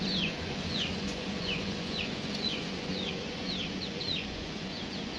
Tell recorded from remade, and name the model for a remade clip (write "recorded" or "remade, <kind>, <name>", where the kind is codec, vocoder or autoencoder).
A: remade, vocoder, Vocos